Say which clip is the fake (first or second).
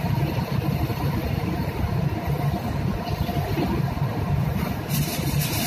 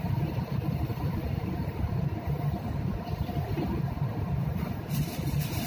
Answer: second